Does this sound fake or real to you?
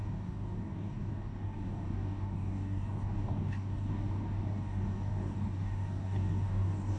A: fake